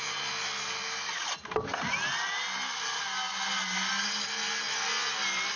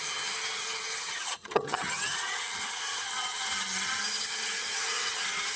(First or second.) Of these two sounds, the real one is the first